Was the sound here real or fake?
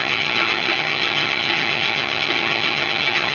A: fake